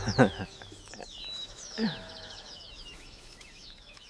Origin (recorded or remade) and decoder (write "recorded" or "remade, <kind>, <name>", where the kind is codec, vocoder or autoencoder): remade, autoencoder, DAC-VAE